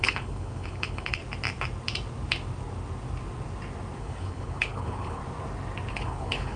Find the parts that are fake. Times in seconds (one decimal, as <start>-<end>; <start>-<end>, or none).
0.0-1.2; 4.0-5.2; 5.9-6.6